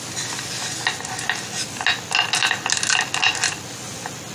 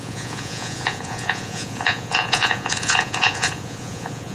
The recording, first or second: first